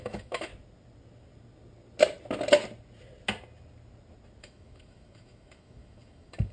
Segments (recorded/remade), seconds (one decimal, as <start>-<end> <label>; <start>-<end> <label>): 0.0-0.5 remade; 0.5-4.4 recorded; 4.4-6.5 remade